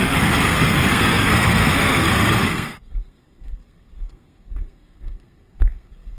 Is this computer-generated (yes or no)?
yes